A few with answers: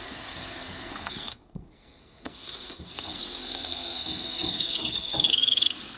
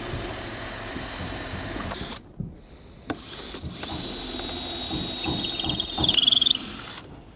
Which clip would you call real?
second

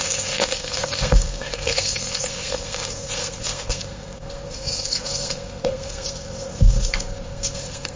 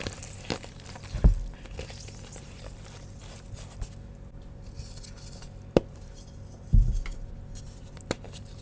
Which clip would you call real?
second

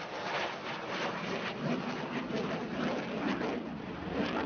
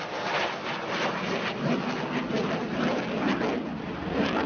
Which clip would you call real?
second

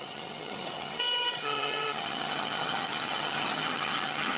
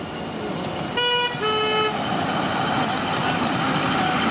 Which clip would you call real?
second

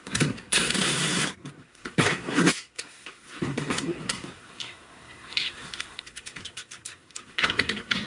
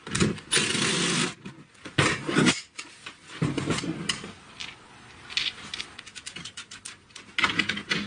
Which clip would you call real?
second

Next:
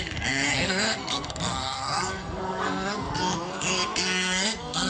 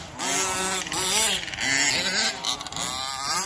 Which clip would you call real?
second